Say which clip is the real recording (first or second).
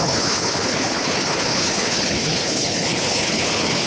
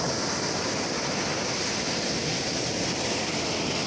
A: second